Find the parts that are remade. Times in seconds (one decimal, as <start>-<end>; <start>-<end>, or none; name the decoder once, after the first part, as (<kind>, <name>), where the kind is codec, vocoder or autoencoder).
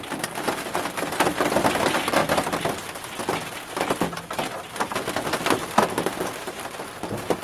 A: 0.0-2.2 (vocoder, BigVGAN v2); 6.0-7.4